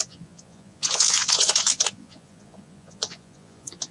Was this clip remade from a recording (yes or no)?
yes